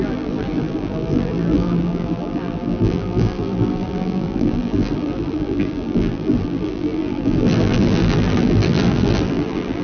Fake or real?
fake